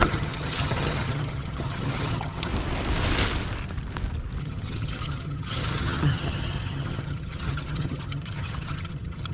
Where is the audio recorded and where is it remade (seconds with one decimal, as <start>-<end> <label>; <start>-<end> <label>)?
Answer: 0.0-2.5 remade; 2.5-4.4 recorded; 4.4-9.3 remade